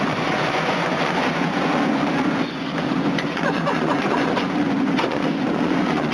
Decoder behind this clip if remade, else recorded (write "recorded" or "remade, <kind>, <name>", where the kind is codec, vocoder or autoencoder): remade, vocoder, Vocos